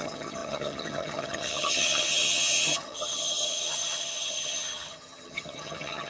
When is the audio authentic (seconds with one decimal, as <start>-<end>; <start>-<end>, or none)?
none